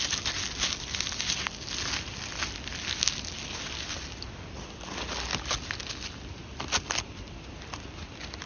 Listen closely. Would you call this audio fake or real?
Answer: real